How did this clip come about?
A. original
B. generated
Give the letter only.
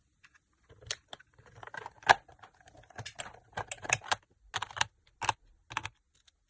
A